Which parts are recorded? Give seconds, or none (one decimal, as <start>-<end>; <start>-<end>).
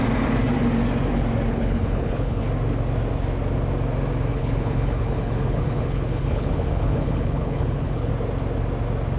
0.0-1.5; 2.4-4.3; 8.1-9.2